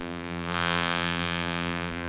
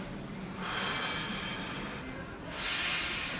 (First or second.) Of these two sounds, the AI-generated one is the first